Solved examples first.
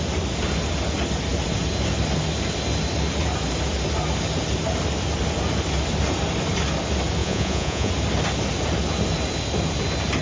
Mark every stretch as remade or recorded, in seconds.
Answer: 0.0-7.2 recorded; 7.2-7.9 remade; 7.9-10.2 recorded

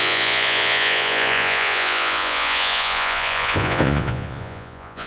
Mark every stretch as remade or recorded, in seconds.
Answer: 0.0-5.1 remade

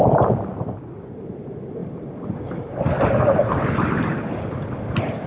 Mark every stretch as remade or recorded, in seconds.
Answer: 0.0-5.3 recorded

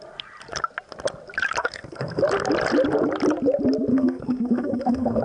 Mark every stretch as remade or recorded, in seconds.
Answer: 0.0-1.6 recorded; 1.6-2.2 remade; 2.2-3.9 recorded; 3.9-5.2 remade